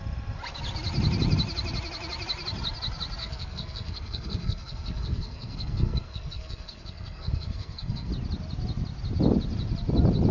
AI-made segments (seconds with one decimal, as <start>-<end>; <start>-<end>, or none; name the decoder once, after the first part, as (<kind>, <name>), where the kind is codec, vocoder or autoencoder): 3.2-8.1 (codec, SNAC)